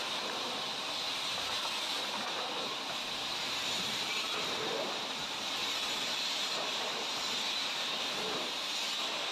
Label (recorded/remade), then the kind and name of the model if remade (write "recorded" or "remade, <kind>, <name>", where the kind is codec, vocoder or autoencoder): remade, vocoder, BigVGAN v2